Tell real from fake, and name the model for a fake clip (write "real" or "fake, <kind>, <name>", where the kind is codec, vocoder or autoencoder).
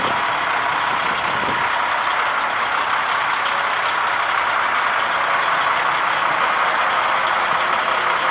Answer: real